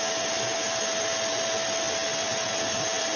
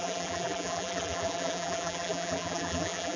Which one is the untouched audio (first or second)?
first